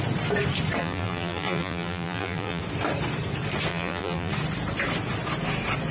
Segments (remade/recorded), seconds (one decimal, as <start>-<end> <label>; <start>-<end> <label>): 0.0-0.8 recorded; 0.8-2.6 remade; 2.6-3.7 recorded; 3.7-4.3 remade; 4.3-5.9 recorded